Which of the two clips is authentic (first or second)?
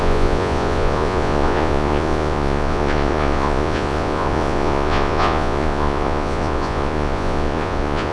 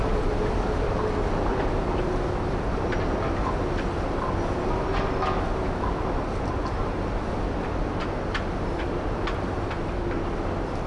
second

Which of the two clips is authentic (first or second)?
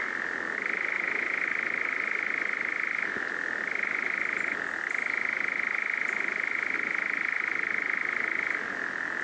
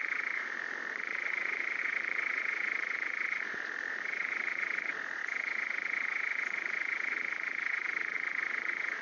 first